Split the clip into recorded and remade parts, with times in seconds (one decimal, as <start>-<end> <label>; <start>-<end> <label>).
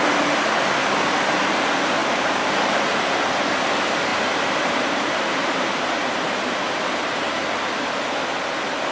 0.0-0.8 recorded; 0.8-1.6 remade; 1.6-2.0 recorded; 2.0-2.7 remade; 2.7-4.1 recorded; 4.1-8.0 remade; 8.0-8.9 recorded